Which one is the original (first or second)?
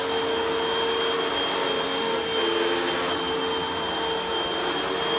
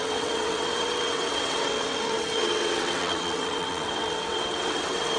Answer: first